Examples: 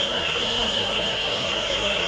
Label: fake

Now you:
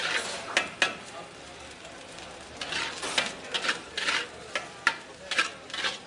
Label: real